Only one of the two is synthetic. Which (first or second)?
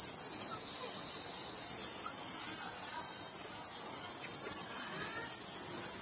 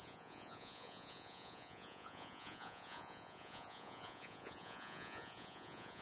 second